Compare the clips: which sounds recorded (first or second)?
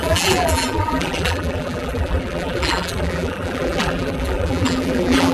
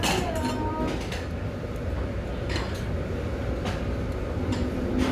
second